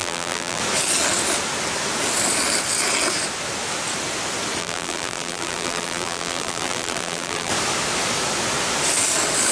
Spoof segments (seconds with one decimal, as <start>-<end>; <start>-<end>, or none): 0.0-0.6; 4.6-7.5